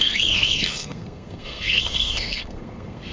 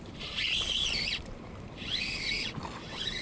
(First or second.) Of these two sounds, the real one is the second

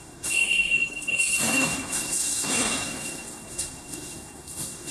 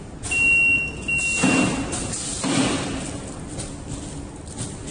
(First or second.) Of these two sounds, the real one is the second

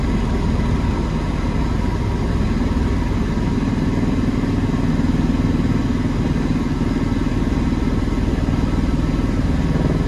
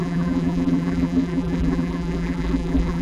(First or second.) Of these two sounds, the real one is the first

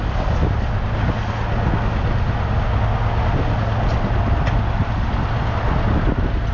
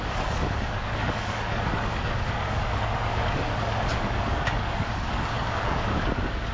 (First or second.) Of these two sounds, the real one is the first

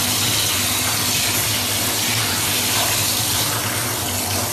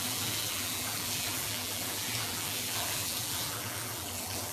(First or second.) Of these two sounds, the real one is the first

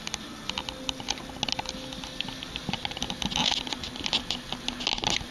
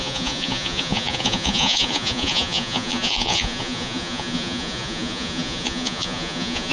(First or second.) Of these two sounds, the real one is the first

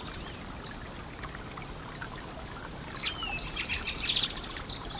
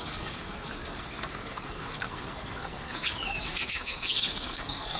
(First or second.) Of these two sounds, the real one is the first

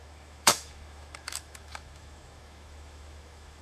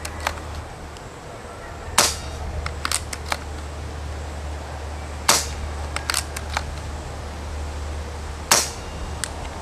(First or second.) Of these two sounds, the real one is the second